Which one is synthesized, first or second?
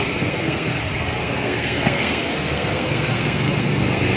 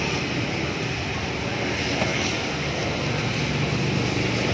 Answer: first